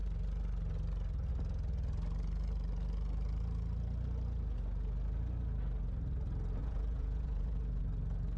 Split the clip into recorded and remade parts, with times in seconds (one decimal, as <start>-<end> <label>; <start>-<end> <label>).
0.0-6.6 recorded; 6.6-7.8 remade; 7.8-8.4 recorded